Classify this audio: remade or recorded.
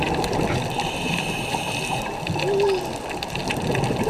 recorded